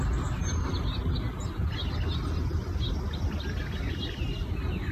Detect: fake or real real